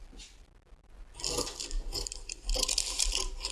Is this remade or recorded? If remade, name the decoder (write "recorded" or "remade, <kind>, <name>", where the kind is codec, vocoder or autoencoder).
recorded